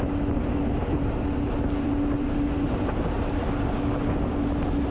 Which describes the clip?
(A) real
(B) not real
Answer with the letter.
A